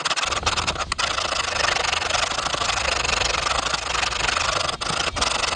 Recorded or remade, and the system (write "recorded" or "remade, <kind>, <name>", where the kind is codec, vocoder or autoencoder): recorded